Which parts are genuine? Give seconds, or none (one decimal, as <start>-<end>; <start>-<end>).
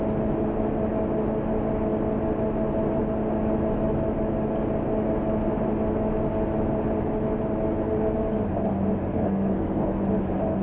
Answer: 0.0-9.1; 10.0-10.6